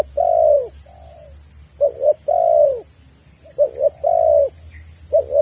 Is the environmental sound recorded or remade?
recorded